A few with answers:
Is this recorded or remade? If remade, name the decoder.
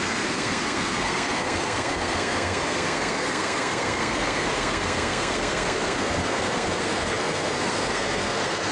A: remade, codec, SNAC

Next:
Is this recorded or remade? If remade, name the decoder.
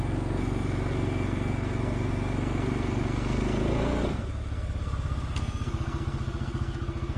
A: remade, codec, SNAC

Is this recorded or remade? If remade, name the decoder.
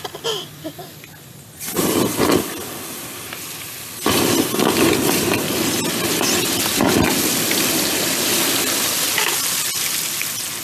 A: recorded